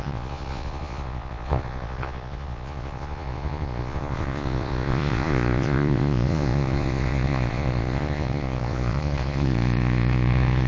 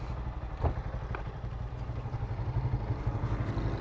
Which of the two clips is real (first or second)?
second